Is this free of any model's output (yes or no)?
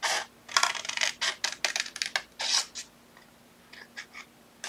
yes